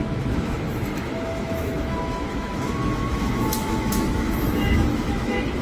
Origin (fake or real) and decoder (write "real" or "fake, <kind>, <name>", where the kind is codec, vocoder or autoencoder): fake, autoencoder, DAC-VAE